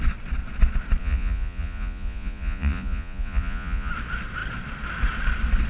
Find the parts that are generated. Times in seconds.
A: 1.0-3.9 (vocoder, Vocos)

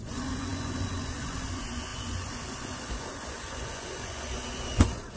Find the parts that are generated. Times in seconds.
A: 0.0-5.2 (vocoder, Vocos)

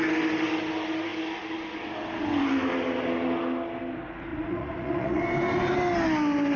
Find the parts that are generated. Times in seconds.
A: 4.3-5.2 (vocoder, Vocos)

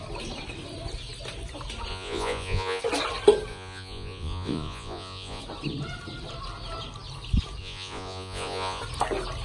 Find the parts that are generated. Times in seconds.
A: 1.9-2.8 (vocoder, Vocos); 3.5-5.4; 7.6-8.8

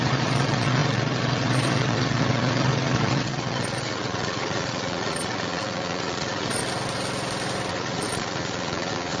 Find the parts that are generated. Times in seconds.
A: 0.0-6.6 (vocoder, Vocos); 7.7-9.2

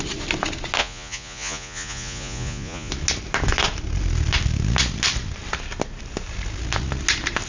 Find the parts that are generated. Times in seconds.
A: 0.8-2.9 (vocoder, Vocos)

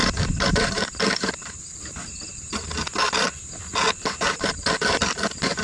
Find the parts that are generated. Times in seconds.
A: none